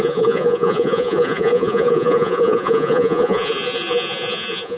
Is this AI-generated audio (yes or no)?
yes